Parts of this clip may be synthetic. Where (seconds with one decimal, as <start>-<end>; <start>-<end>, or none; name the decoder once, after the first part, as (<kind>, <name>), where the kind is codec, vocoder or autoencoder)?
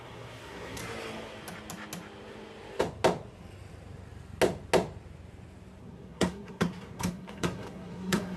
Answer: 0.0-0.8 (codec, SNAC); 5.8-8.4